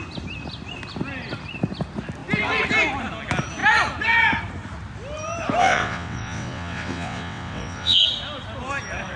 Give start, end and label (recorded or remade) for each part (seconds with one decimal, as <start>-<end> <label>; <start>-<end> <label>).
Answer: 0.0-5.6 recorded; 5.6-8.0 remade; 8.0-9.2 recorded